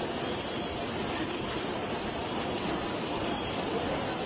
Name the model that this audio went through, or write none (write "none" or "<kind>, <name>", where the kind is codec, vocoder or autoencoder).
vocoder, BigVGAN v2